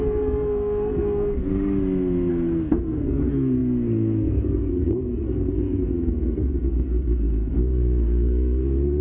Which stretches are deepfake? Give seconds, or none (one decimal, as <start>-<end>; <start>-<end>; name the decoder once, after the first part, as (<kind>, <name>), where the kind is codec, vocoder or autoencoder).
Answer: 0.0-1.5 (codec, SNAC); 2.3-9.0